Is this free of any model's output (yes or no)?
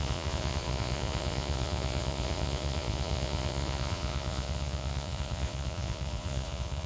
no